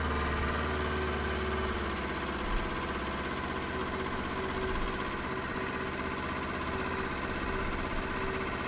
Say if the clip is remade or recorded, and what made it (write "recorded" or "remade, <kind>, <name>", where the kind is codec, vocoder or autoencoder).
recorded